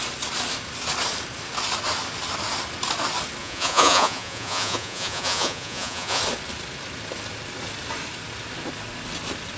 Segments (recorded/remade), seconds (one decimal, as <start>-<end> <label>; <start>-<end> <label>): 0.0-3.4 recorded; 3.4-6.2 remade; 6.2-9.6 recorded